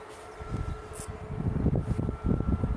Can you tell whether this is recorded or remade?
recorded